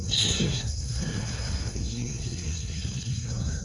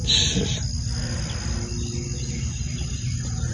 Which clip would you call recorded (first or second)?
second